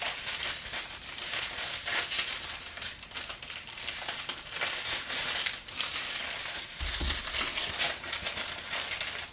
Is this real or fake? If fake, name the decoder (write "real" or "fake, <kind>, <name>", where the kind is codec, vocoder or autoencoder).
real